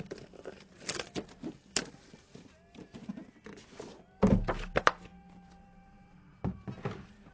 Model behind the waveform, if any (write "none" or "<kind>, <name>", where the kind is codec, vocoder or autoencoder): none